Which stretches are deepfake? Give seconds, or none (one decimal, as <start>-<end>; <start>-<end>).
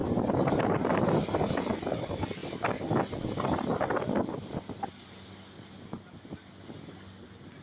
none